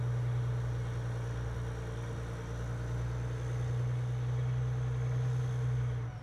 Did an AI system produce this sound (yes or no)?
no